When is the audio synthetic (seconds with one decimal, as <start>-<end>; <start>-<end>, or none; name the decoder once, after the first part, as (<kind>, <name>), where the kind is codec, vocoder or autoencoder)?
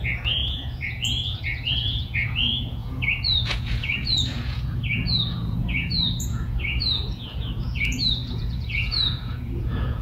0.0-10.0 (vocoder, Vocos)